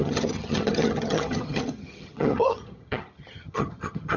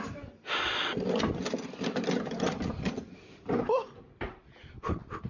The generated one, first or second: first